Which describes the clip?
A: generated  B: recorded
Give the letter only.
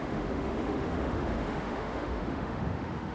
A